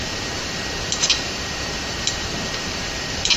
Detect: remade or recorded remade